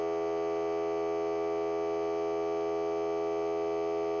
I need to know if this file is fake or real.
real